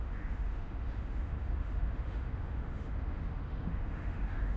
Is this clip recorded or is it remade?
remade